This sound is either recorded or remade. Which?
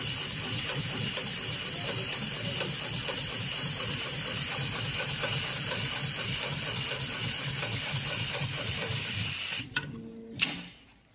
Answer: recorded